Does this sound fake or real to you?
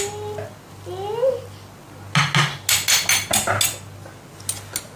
real